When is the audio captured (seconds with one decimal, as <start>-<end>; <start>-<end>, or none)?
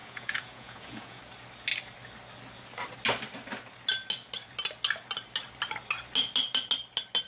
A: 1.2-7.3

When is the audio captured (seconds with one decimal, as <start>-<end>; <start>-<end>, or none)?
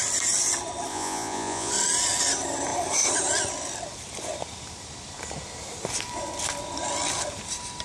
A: 0.0-0.9; 1.7-7.8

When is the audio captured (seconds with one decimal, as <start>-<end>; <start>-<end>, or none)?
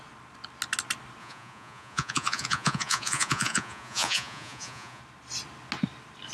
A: 0.0-1.2; 5.0-6.3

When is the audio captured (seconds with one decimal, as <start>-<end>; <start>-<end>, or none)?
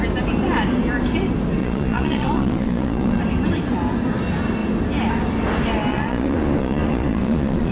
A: 0.0-1.6; 3.2-5.9